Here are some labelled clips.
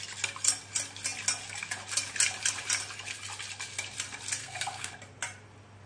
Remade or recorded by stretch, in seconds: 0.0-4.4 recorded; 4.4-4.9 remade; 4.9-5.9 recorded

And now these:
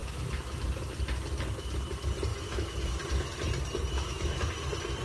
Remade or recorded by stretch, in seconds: 0.0-0.6 remade; 0.6-2.3 recorded; 2.3-2.9 remade; 2.9-3.9 recorded; 3.9-4.4 remade; 4.4-5.0 recorded

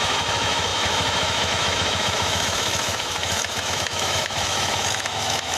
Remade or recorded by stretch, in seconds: 0.0-5.6 remade

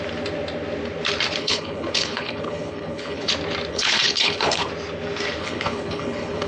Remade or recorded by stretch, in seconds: 0.0-1.4 recorded; 1.4-3.3 remade; 3.3-3.7 recorded; 3.7-4.7 remade; 4.7-5.4 recorded; 5.4-6.5 remade

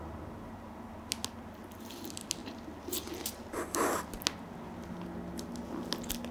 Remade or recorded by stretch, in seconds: 0.0-6.3 recorded